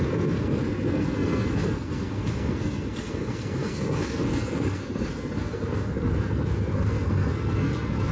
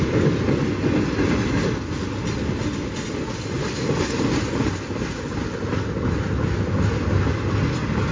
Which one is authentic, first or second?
second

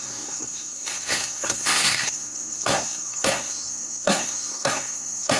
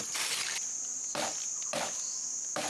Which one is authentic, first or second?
second